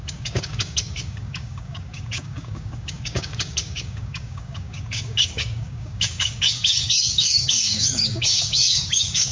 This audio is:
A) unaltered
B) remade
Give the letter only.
B